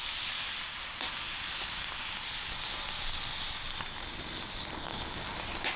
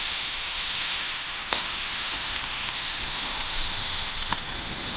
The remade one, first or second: second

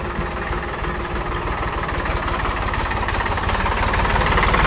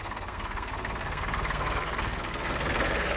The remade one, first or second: second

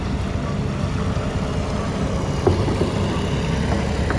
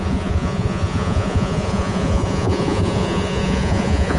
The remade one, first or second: second